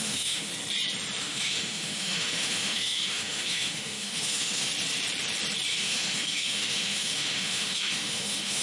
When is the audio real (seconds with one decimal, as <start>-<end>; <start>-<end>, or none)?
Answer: 0.5-1.2; 4.7-5.7